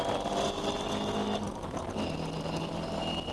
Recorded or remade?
recorded